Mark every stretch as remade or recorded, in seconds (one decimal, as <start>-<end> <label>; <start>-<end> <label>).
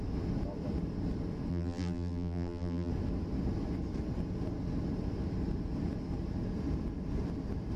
0.0-1.5 recorded; 1.5-2.9 remade; 2.9-7.8 recorded